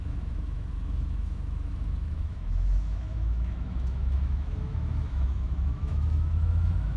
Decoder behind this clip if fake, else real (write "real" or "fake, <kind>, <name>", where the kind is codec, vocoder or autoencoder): fake, autoencoder, DAC-VAE